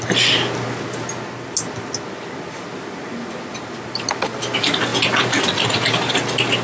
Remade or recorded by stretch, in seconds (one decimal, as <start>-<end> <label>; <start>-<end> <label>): 0.0-6.6 recorded